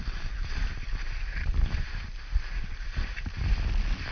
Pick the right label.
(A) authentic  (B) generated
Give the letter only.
A